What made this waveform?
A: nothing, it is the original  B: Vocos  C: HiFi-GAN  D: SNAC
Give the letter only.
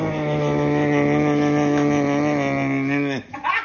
A